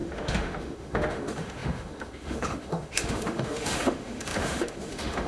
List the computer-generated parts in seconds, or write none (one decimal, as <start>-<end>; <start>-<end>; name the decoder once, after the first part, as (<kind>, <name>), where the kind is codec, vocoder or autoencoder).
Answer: 0.0-5.3 (autoencoder, DAC-VAE)